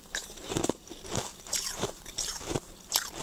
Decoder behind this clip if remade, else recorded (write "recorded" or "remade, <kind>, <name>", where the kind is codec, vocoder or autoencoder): remade, vocoder, BigVGAN v2